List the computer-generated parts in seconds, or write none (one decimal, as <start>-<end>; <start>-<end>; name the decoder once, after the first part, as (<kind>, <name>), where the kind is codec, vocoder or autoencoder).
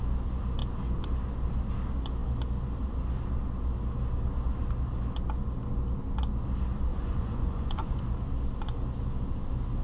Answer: 6.9-8.0 (vocoder, Vocos)